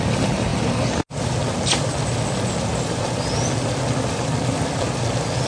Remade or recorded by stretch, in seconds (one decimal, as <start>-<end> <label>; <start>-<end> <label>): 0.0-5.5 recorded

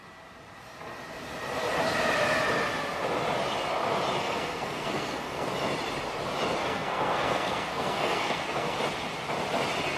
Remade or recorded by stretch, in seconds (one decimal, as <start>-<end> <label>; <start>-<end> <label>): 0.0-4.2 recorded; 4.2-5.5 remade; 5.5-6.6 recorded; 6.6-8.8 remade; 8.8-10.0 recorded

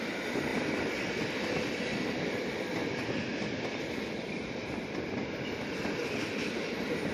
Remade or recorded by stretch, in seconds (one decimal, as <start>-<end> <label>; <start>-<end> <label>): 0.0-0.5 recorded; 0.5-3.8 remade; 3.8-7.1 recorded

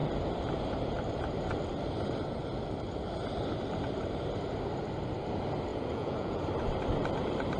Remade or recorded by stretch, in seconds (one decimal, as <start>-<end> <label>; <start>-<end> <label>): 0.0-5.7 recorded; 5.7-6.4 remade; 6.4-7.6 recorded